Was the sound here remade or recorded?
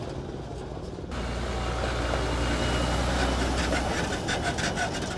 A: recorded